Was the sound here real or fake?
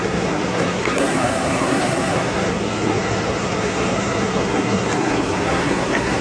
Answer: fake